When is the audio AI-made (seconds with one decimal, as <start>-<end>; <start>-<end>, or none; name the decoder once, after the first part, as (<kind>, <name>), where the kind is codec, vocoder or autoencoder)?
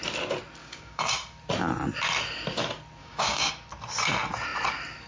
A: 0.6-1.1 (codec, DAC); 3.0-3.5